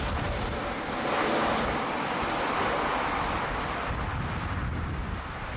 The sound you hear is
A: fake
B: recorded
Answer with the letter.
B